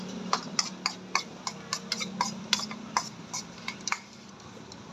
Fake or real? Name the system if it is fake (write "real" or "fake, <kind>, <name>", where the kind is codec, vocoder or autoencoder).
real